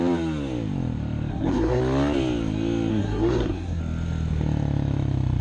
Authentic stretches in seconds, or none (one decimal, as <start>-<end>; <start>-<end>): 0.0-1.3; 1.8-2.9; 3.8-5.4